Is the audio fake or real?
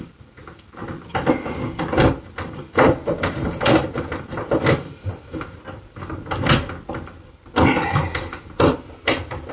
real